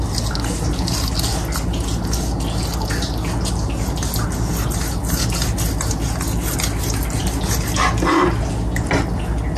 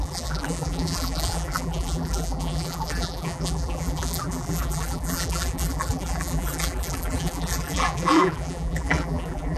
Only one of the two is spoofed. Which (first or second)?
second